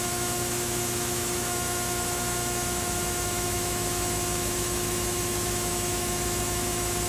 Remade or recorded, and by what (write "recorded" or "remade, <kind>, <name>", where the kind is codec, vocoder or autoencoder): remade, autoencoder, DAC-VAE